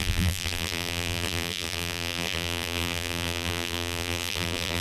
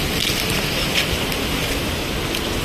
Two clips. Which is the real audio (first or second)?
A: second